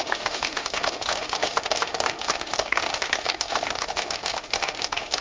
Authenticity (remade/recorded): remade